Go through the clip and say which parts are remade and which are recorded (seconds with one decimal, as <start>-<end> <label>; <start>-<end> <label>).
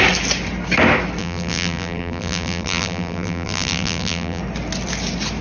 0.0-1.2 recorded; 1.2-4.4 remade; 4.4-5.4 recorded